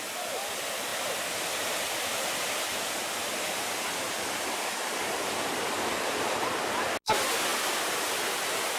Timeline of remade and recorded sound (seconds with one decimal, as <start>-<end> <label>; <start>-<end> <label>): 0.0-8.8 recorded